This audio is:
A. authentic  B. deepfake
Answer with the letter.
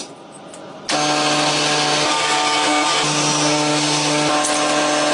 A